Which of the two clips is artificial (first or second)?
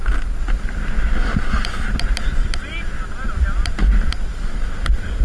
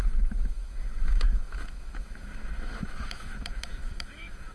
second